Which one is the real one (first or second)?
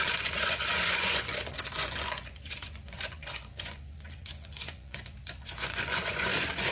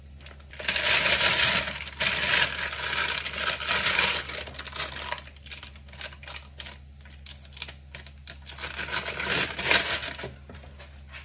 second